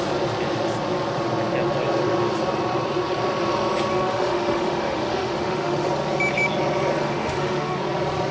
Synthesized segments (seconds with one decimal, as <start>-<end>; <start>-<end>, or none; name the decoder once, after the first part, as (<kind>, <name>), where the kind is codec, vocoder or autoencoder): 3.9-5.9 (autoencoder, DAC-VAE); 7.0-7.8